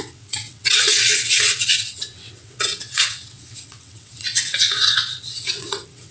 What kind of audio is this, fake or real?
fake